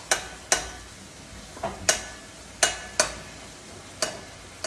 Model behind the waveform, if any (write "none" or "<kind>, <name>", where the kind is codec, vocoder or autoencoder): none